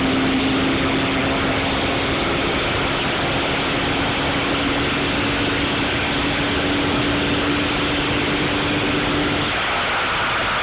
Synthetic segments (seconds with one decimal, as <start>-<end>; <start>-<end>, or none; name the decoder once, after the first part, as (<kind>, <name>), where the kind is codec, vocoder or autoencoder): none

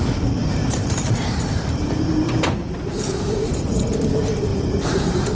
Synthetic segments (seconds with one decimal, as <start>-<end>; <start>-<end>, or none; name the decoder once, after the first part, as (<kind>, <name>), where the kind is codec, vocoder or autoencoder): 0.4-3.6 (vocoder, BigVGAN v2); 4.5-5.3

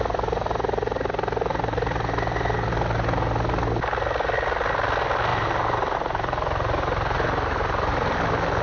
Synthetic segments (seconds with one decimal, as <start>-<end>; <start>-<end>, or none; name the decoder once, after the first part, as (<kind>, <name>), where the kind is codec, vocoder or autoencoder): 5.3-7.9 (vocoder, BigVGAN v2)